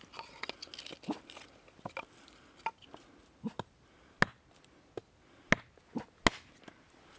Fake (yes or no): no